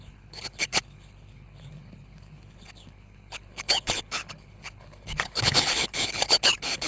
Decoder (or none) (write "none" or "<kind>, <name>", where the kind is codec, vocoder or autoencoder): codec, HILCodec